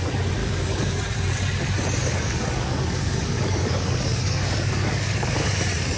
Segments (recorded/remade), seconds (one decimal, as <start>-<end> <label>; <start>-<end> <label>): 0.0-0.4 recorded; 0.4-1.0 remade; 1.0-2.0 recorded; 2.0-5.6 remade; 5.6-6.0 recorded